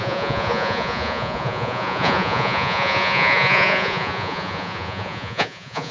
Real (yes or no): no